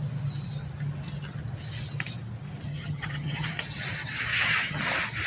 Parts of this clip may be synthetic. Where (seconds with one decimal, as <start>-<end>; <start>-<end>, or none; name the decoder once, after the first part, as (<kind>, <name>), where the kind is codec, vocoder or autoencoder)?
2.7-3.5 (vocoder, HiFi-GAN); 4.3-4.8